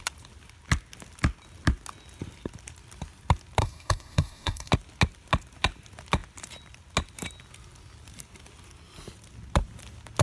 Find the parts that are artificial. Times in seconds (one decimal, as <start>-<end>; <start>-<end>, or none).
3.6-4.7